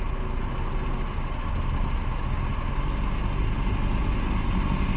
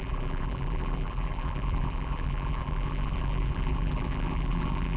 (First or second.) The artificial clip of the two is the second